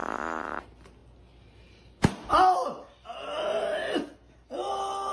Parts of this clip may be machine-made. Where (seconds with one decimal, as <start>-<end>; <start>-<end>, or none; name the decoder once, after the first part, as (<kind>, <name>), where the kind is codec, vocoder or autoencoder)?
0.0-0.6 (autoencoder, DAC-VAE)